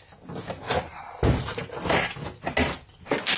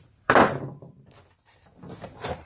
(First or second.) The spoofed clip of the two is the second